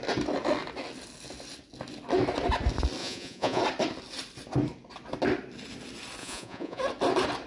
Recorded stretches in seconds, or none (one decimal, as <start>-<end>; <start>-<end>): 0.0-3.0; 3.6-6.2; 6.8-7.5

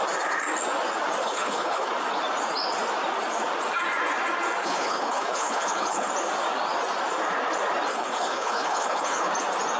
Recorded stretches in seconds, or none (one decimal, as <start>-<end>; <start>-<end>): 0.0-1.2; 1.9-4.6; 6.1-7.9; 9.3-9.8

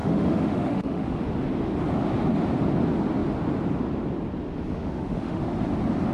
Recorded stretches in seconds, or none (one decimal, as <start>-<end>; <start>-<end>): 1.2-4.7; 5.4-6.1

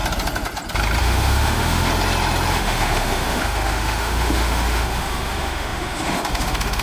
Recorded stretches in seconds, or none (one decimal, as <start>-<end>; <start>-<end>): 0.0-1.0; 1.9-2.5